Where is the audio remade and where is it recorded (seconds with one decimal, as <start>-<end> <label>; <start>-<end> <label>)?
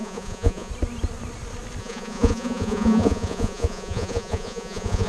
0.0-0.7 remade; 0.7-1.8 recorded; 1.8-5.1 remade